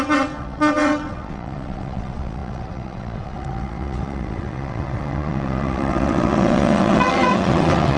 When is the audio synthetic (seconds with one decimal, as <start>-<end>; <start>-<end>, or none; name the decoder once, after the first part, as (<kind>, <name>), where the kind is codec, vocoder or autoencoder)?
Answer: 0.0-8.0 (vocoder, WaveNeXt)